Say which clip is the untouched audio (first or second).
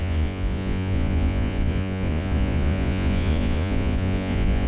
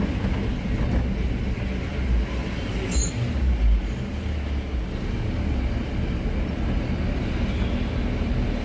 second